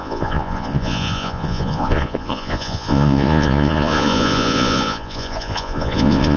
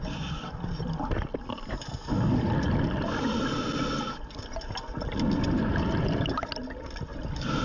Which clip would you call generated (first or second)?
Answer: first